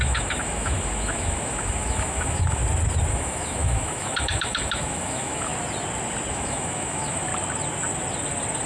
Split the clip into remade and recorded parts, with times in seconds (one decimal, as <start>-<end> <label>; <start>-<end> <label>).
0.0-2.6 remade; 2.6-3.1 recorded; 3.1-5.5 remade; 5.5-6.3 recorded; 6.3-7.3 remade; 7.3-8.7 recorded